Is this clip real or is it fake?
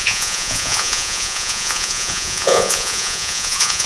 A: fake